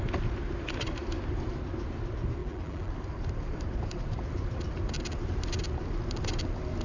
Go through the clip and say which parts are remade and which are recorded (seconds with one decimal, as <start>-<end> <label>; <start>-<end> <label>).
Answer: 0.0-2.4 recorded; 2.4-2.9 remade; 2.9-6.8 recorded

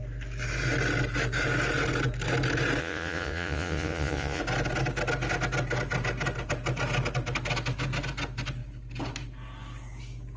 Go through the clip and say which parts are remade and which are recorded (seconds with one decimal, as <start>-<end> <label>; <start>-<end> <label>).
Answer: 0.0-2.8 recorded; 2.8-4.4 remade; 4.4-10.4 recorded

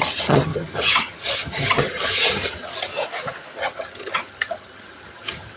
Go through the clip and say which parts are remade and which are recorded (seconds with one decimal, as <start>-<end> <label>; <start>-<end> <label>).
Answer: 0.0-2.9 remade; 2.9-3.6 recorded; 3.6-5.6 remade

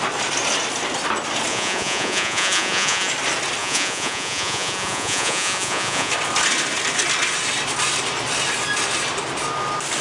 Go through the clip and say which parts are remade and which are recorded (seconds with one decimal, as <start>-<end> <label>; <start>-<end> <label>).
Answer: 0.0-1.5 recorded; 1.5-3.1 remade; 3.1-3.6 recorded; 3.6-6.1 remade; 6.1-10.0 recorded

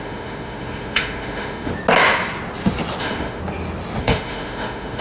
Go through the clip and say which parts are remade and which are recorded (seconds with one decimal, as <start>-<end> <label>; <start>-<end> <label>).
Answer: 0.0-1.7 remade; 1.7-3.0 recorded; 3.0-3.4 remade; 3.4-4.0 recorded; 4.0-5.0 remade

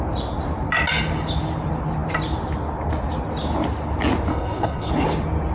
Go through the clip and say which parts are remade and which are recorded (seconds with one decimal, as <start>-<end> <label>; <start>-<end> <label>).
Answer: 0.0-4.3 recorded; 4.3-4.9 remade; 4.9-5.5 recorded